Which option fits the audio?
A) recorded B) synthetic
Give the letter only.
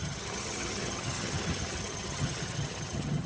B